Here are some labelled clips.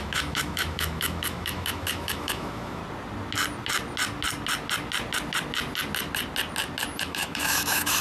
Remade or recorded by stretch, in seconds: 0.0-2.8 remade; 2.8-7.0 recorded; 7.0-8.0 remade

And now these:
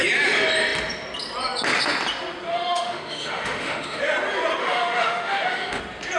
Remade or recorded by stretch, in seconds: 0.0-2.5 recorded; 2.5-4.0 remade; 4.0-4.6 recorded; 4.6-5.8 remade; 5.8-6.2 recorded

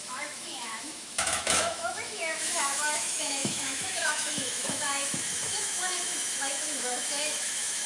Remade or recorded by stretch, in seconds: 0.0-7.9 remade

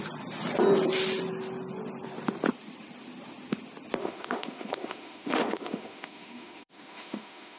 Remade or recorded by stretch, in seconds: 0.0-4.0 recorded; 4.0-7.6 remade

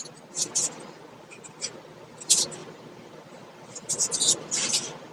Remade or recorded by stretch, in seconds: 0.0-5.1 recorded

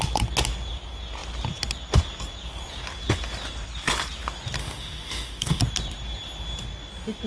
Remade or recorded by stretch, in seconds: 0.0-4.6 recorded; 4.6-5.6 remade; 5.6-7.3 recorded

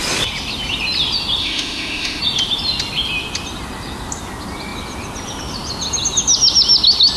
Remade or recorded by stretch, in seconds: 0.0-1.4 recorded; 1.4-2.2 remade; 2.2-7.2 recorded

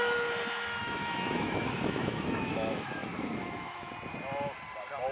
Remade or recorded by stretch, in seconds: 0.0-0.8 recorded; 0.8-3.9 remade; 3.9-5.1 recorded